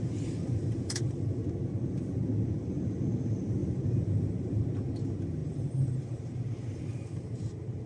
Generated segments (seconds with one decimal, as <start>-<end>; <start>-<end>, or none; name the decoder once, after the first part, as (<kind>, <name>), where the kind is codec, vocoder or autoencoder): 0.0-1.4 (vocoder, BigVGAN v2); 3.2-7.9